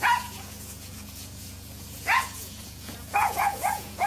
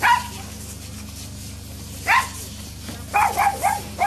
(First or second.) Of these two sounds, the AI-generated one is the first